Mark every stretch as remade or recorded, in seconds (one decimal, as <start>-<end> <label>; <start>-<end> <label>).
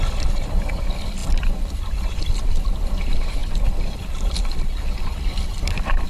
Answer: 0.0-6.1 remade